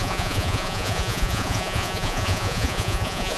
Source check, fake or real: fake